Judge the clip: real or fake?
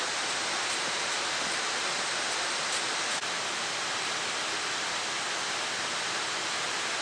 real